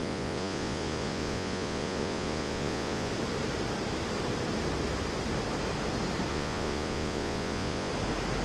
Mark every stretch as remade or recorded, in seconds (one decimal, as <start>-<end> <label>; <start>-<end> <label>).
0.0-3.1 remade; 3.1-6.3 recorded; 6.3-7.9 remade; 7.9-8.4 recorded